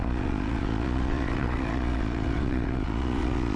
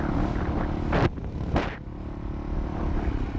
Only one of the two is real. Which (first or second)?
second